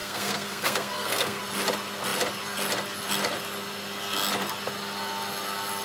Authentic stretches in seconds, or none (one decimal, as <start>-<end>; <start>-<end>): 1.4-5.8